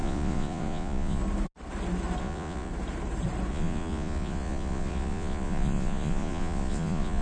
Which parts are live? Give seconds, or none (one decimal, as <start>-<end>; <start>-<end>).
1.2-2.2; 2.7-3.5